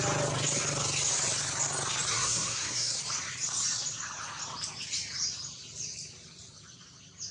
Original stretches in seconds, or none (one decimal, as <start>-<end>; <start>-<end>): 0.0-2.1; 3.0-7.3